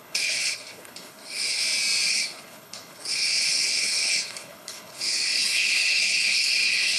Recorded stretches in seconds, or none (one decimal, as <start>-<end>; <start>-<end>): 1.6-2.1